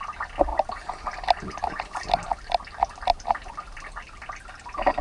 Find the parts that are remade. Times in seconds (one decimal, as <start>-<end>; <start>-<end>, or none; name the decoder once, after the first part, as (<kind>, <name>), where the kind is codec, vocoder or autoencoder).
none